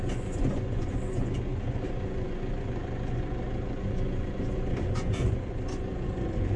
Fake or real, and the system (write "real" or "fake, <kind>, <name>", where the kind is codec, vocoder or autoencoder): fake, vocoder, Vocos